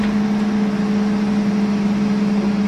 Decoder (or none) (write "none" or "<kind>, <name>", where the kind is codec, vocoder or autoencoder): none